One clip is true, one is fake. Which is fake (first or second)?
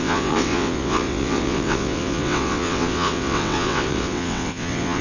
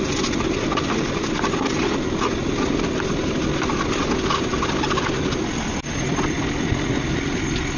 first